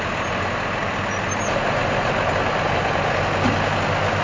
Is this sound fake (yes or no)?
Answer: no